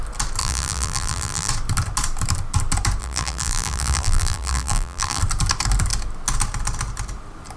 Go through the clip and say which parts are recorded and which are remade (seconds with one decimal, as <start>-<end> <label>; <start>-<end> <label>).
0.0-0.4 recorded; 0.4-1.5 remade; 1.5-3.0 recorded; 3.0-5.2 remade; 5.2-7.6 recorded